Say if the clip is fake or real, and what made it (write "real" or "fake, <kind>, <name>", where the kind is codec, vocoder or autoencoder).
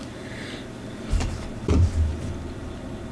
real